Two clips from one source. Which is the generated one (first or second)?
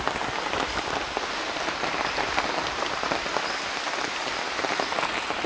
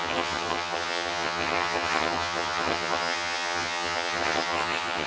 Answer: second